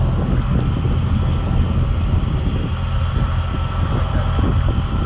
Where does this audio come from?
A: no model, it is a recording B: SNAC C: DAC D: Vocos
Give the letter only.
A